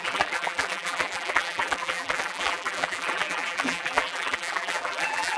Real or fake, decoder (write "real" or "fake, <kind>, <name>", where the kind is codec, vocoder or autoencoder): fake, vocoder, BigVGAN v2